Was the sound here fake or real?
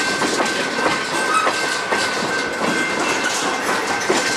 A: real